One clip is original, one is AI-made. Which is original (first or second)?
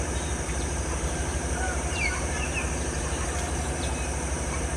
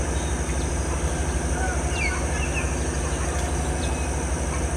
second